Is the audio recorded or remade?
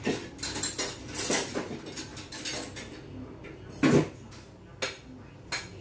recorded